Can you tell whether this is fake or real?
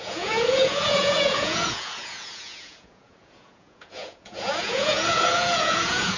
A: fake